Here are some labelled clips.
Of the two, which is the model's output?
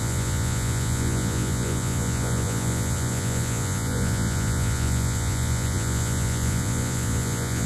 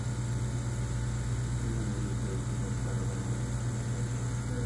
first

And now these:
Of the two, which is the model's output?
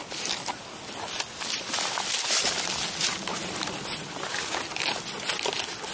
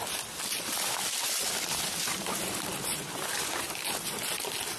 second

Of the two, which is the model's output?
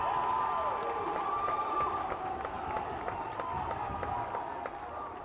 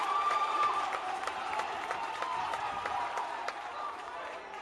second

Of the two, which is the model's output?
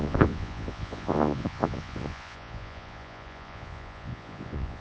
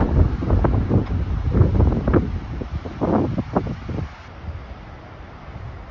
first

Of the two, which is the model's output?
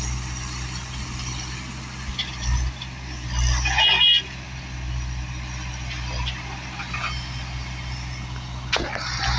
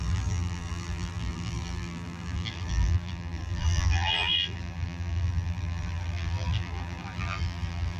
second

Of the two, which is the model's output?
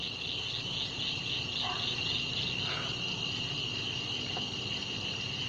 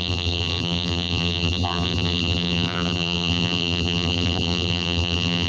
second